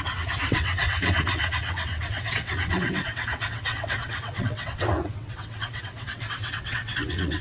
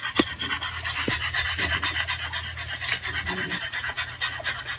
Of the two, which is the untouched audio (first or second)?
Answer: second